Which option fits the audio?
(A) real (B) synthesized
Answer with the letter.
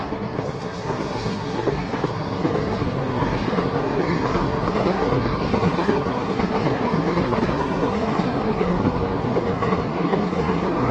B